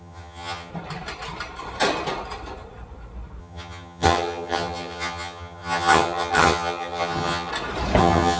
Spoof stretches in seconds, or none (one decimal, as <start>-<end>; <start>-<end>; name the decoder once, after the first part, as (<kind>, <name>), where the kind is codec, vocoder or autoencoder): 0.0-0.7 (vocoder, HiFi-GAN); 3.4-7.5; 8.0-8.4